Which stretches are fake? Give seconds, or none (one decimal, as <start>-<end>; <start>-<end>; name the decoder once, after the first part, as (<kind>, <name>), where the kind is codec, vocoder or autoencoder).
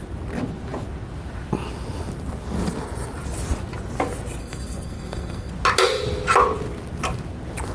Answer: 4.4-5.5 (codec, SNAC)